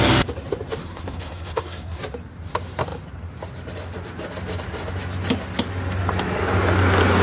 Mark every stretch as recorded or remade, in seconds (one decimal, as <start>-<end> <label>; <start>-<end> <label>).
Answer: 0.0-0.8 recorded; 0.8-2.0 remade; 2.0-7.2 recorded